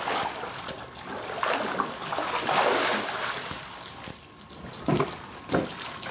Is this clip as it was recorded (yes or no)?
yes